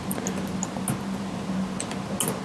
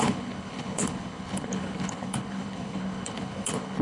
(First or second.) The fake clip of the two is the second